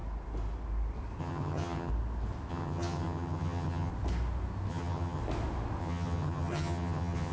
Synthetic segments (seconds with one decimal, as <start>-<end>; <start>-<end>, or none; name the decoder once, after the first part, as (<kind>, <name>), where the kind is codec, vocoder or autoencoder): 1.2-1.9 (vocoder, HiFi-GAN); 2.5-3.9; 4.7-5.2; 5.8-7.3